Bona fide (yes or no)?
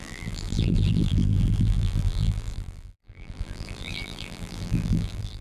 no